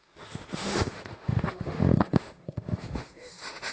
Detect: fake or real fake